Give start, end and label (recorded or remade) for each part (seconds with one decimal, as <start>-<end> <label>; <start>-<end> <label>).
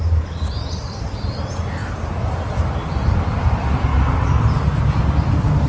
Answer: 0.0-5.7 recorded